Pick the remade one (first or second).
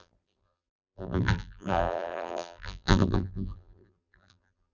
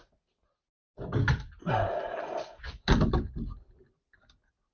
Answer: first